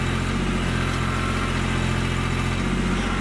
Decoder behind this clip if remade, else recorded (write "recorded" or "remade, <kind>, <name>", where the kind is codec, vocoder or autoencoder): recorded